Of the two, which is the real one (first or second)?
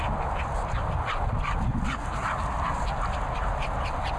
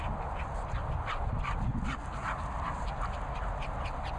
second